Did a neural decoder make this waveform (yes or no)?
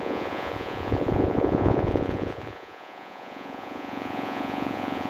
yes